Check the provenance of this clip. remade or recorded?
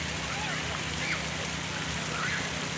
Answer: recorded